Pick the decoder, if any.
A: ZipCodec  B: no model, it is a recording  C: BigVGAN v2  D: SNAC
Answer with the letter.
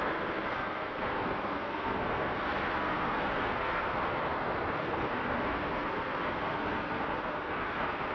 D